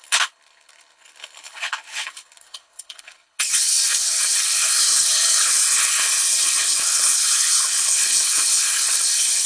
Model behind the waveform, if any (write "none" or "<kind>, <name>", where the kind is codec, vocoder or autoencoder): codec, HILCodec